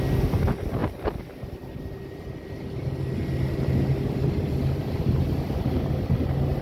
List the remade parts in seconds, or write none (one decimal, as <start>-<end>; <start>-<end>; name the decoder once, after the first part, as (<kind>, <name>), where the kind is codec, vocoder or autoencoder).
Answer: none